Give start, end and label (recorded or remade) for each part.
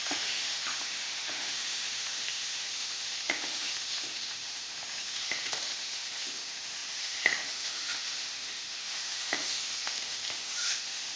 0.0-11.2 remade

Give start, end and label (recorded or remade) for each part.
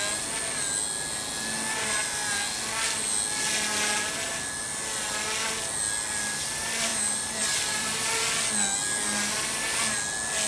0.0-6.9 recorded; 6.9-7.9 remade; 7.9-10.5 recorded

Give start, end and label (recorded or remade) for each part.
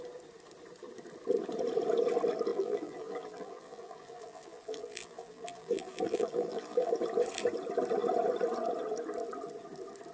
0.0-2.5 recorded; 2.5-6.9 remade; 6.9-10.1 recorded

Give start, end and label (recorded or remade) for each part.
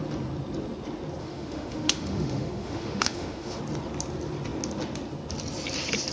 0.0-1.2 recorded; 1.2-3.6 remade; 3.6-6.1 recorded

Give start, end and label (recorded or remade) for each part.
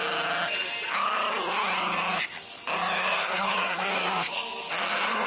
0.0-3.0 recorded; 3.0-5.3 remade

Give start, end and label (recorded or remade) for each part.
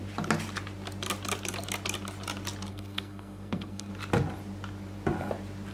0.0-2.7 recorded; 2.7-3.9 remade; 3.9-5.7 recorded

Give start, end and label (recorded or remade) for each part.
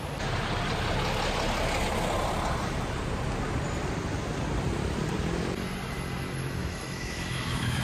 0.0-6.6 recorded; 6.6-7.8 remade